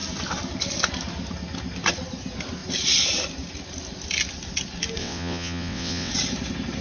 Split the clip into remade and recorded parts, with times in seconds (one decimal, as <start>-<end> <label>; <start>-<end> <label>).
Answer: 0.0-5.0 recorded; 5.0-6.1 remade; 6.1-6.8 recorded